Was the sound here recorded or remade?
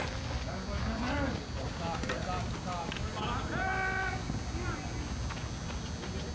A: recorded